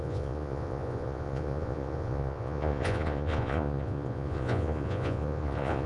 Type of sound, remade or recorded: remade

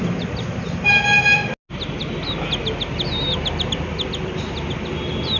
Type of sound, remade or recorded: recorded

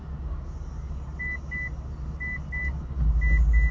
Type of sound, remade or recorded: recorded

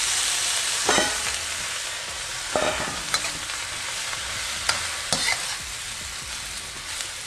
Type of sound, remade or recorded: recorded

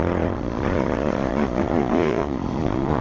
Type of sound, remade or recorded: remade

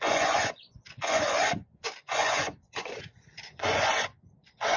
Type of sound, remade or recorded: remade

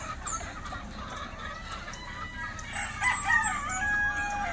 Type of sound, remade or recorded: recorded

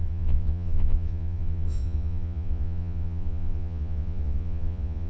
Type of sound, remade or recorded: remade